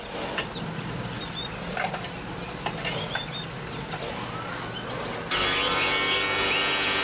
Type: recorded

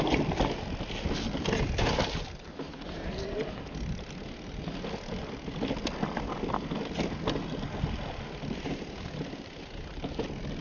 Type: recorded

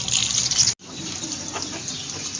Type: recorded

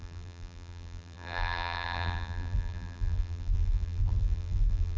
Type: remade